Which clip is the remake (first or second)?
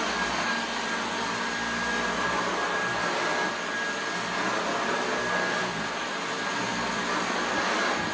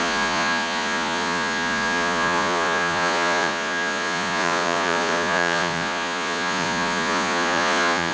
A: second